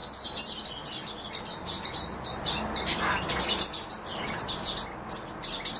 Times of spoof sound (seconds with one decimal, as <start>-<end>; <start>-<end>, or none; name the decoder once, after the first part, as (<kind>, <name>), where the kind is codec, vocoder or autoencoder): none